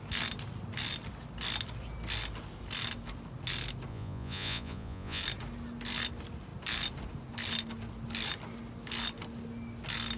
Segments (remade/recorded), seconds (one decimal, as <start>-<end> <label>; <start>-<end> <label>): 0.0-3.9 recorded; 3.9-5.2 remade; 5.2-10.2 recorded